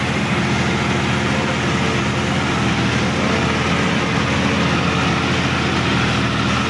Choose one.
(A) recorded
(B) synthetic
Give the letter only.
A